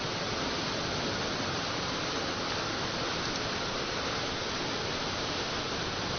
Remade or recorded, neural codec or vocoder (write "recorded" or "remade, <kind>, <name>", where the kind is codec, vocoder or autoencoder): recorded